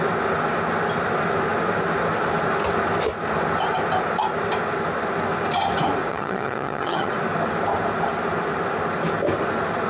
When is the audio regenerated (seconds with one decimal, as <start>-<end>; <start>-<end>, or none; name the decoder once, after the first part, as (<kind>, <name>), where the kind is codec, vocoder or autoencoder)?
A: 6.1-7.1 (vocoder, HiFi-GAN)